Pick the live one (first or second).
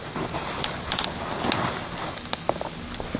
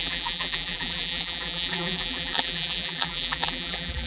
first